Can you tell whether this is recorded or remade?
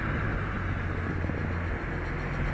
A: recorded